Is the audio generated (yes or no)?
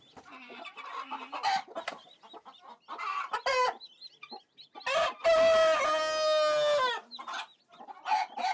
no